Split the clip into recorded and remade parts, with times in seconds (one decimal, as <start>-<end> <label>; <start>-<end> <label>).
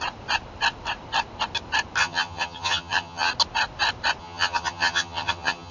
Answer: 0.0-2.0 recorded; 2.0-3.3 remade; 3.3-4.2 recorded; 4.2-5.7 remade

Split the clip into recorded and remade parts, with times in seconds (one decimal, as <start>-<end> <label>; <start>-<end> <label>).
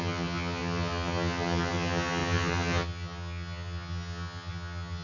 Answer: 0.0-5.0 remade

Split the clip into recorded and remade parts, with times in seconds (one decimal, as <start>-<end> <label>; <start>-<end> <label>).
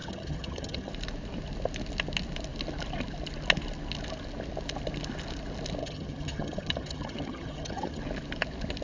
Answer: 0.0-0.9 remade; 0.9-5.8 recorded; 5.8-8.0 remade; 8.0-8.8 recorded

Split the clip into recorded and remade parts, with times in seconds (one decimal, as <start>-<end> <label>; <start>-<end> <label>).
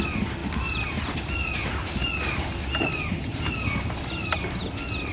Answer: 0.0-5.1 recorded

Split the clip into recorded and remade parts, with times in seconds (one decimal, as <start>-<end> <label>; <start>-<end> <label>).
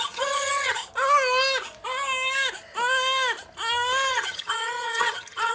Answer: 0.0-0.8 remade; 0.8-4.1 recorded; 4.1-5.5 remade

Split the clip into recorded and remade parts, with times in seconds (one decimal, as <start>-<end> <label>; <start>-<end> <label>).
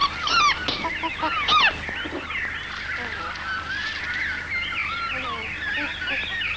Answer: 0.0-6.6 recorded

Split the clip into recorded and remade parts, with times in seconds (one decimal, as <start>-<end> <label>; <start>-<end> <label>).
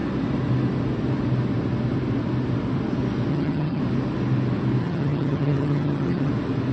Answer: 0.0-3.3 recorded; 3.3-3.8 remade; 3.8-4.8 recorded; 4.8-6.3 remade; 6.3-6.7 recorded